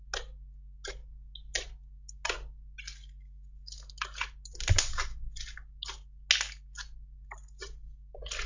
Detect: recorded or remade recorded